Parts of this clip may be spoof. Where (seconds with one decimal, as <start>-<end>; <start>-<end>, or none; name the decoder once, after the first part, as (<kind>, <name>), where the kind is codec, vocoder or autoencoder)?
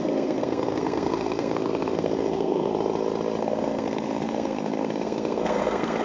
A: 0.0-2.7 (codec, SNAC); 3.4-6.0